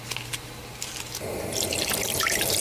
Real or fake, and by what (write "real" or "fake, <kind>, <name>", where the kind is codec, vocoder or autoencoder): real